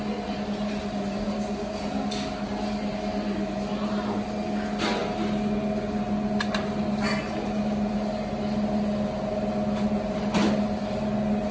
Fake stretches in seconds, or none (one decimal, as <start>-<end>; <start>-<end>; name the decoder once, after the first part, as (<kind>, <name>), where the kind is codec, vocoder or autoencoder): none